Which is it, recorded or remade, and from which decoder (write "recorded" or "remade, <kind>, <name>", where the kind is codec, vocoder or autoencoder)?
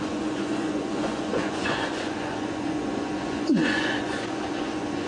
remade, vocoder, Vocos